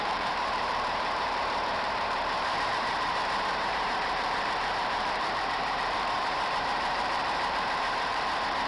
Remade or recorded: remade